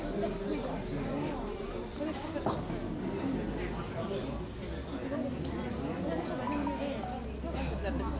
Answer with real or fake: real